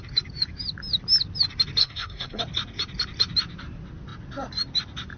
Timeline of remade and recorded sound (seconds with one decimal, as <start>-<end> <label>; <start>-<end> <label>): 0.0-1.8 recorded; 1.8-2.4 remade; 2.4-5.2 recorded